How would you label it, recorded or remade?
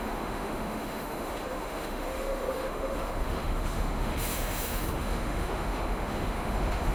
remade